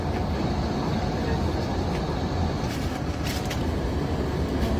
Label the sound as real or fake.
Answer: real